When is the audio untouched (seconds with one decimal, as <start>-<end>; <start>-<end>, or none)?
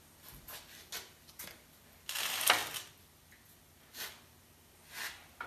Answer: 0.0-5.5